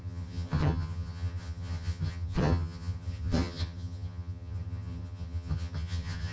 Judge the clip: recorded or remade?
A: remade